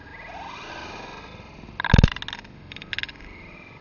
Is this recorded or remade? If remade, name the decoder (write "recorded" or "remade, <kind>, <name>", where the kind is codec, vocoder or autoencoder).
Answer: recorded